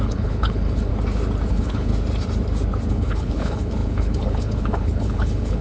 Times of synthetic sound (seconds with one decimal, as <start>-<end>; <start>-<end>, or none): 0.0-0.9; 1.5-1.9; 2.9-5.6